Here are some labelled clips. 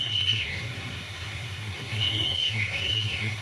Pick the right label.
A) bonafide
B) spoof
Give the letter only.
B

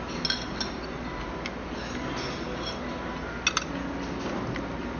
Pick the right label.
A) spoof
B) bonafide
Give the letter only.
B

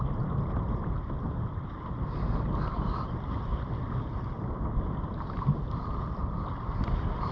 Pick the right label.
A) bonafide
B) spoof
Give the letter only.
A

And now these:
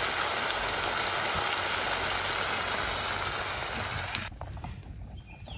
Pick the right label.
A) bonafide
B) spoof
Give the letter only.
A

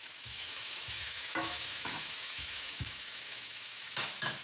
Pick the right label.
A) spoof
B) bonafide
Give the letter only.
A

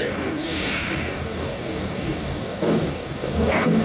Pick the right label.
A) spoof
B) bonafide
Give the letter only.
A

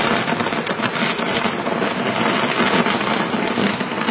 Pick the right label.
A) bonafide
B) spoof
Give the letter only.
A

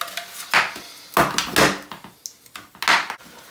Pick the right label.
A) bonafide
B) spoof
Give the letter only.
A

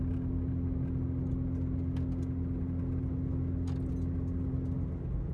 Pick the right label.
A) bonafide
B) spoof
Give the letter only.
A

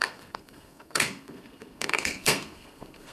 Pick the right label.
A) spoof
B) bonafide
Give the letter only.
A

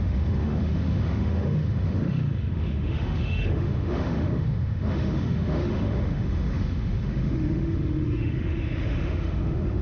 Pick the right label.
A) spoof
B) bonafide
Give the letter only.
A